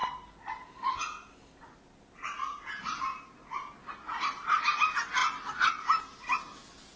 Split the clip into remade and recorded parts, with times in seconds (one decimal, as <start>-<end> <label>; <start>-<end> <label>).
0.0-7.0 recorded